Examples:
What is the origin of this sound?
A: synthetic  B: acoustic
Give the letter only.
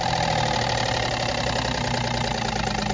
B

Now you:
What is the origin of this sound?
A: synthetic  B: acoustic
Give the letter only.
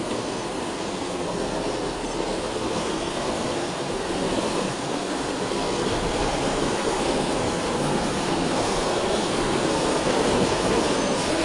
A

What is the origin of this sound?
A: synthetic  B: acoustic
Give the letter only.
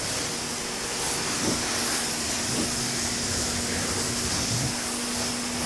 B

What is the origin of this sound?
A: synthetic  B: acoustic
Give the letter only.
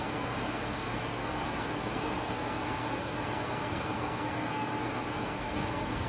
A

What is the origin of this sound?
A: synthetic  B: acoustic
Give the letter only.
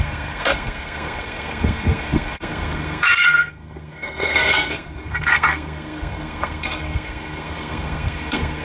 A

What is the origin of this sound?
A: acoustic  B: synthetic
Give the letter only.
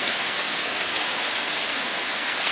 B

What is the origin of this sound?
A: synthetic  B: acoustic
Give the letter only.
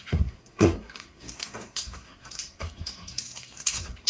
A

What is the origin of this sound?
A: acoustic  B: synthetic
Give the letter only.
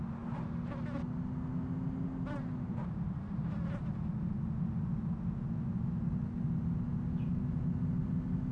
A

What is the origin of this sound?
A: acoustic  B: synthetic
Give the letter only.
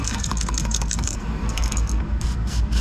B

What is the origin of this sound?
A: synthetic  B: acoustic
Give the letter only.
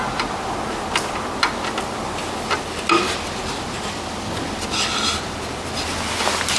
B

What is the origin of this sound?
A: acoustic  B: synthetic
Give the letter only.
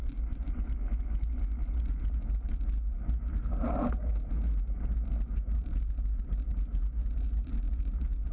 A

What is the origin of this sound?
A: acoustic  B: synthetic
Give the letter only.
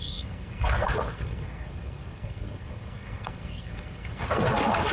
B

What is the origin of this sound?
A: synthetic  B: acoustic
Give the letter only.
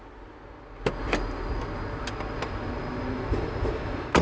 B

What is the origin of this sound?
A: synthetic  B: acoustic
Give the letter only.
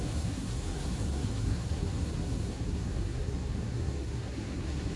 A